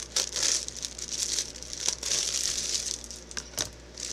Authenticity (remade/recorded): recorded